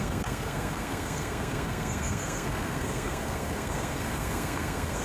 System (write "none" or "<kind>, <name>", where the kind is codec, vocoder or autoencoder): codec, SNAC